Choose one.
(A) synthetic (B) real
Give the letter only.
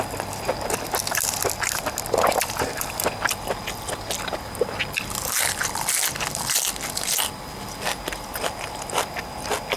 B